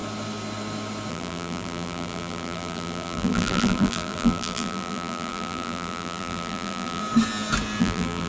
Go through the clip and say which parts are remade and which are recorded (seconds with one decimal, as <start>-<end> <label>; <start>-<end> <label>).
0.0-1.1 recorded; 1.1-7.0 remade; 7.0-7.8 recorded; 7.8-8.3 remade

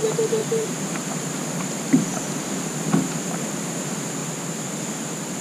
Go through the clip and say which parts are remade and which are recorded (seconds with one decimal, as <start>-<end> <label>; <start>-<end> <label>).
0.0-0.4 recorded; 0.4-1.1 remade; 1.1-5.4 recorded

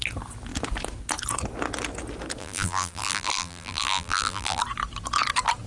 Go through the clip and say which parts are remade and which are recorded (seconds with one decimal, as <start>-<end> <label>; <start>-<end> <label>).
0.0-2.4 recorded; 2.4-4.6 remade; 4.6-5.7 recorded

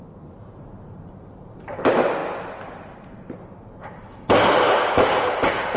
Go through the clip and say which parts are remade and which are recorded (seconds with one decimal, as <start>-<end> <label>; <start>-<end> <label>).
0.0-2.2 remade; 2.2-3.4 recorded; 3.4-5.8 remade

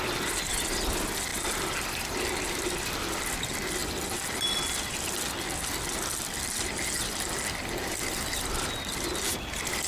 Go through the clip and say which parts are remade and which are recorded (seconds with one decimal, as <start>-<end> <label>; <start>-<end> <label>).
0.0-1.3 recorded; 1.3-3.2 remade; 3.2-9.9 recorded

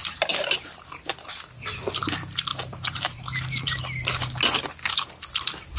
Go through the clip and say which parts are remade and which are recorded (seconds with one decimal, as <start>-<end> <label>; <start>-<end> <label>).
0.0-1.3 remade; 1.3-2.5 recorded; 2.5-3.8 remade; 3.8-5.8 recorded

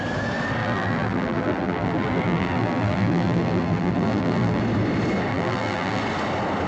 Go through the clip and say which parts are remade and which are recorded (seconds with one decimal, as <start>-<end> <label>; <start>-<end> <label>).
0.0-0.6 recorded; 0.6-4.6 remade; 4.6-5.3 recorded; 5.3-6.0 remade; 6.0-6.7 recorded